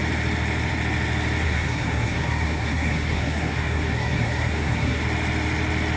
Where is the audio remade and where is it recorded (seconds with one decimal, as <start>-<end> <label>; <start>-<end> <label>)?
0.0-1.4 recorded; 1.4-5.0 remade; 5.0-6.0 recorded